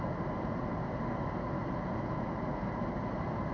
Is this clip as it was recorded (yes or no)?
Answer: yes